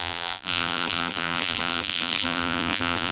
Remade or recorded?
remade